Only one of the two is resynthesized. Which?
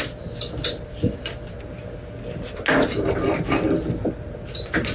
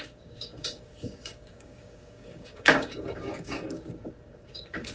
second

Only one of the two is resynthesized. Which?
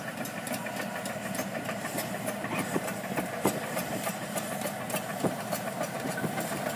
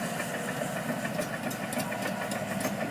first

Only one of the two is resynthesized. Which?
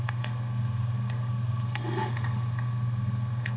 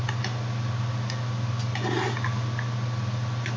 first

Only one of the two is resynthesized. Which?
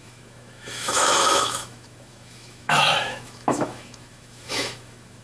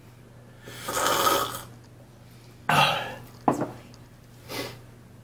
first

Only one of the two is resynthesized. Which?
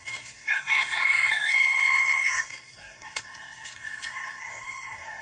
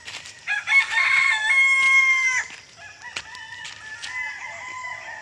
first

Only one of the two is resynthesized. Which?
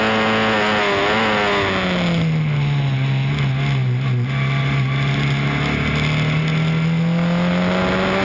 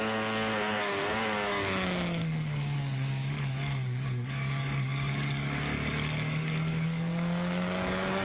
second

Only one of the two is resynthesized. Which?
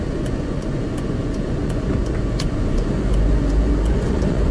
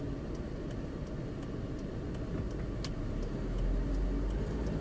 first